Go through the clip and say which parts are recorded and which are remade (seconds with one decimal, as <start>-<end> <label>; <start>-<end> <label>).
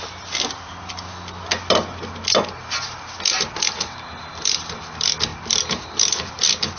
0.0-5.3 recorded; 5.3-6.3 remade; 6.3-6.8 recorded